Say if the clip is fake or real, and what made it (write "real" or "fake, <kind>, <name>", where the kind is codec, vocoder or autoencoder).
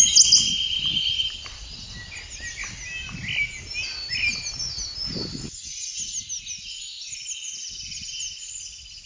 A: real